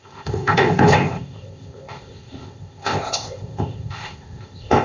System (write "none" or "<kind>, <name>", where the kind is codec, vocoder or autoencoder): codec, ZipCodec